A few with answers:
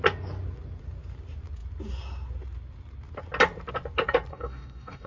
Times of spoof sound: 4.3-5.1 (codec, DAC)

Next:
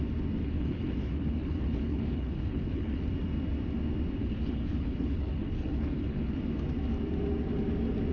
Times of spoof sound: 0.4-3.1 (codec, HILCodec); 4.2-6.4